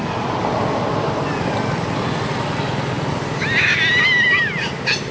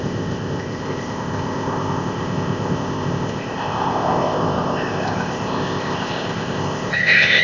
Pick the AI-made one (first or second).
second